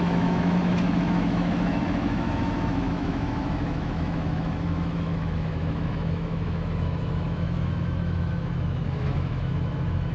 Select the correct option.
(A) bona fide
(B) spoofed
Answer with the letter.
B